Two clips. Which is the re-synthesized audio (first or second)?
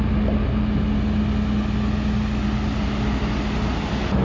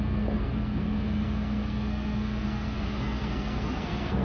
second